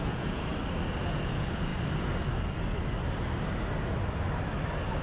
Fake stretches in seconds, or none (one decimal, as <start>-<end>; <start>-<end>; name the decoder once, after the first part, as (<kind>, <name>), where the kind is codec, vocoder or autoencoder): 0.0-0.5 (vocoder, Vocos); 1.0-1.7